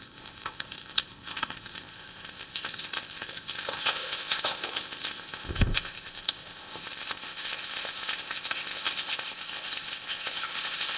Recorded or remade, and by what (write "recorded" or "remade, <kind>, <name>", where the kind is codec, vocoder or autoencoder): remade, codec, ZipCodec